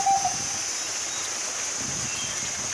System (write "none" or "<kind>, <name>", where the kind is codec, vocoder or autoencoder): none